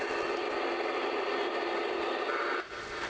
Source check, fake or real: real